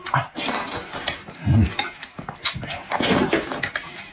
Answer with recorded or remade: recorded